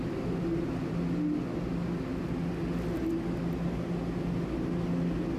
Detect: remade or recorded recorded